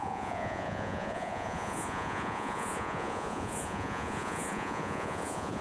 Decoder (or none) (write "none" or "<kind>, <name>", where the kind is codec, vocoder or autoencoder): vocoder, Vocos